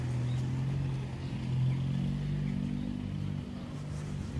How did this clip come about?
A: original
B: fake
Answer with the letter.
A